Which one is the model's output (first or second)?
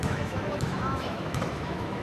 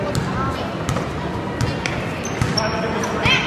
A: first